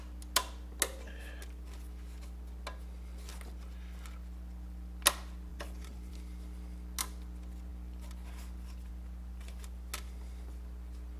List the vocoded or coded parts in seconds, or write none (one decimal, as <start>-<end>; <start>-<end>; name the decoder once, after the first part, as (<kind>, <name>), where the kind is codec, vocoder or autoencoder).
5.5-6.1 (vocoder, BigVGAN v2)